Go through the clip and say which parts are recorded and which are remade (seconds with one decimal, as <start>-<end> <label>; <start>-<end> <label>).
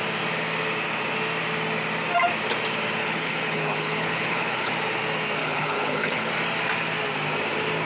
0.0-3.0 recorded; 3.0-4.7 remade; 4.7-5.4 recorded; 5.4-6.3 remade; 6.3-7.8 recorded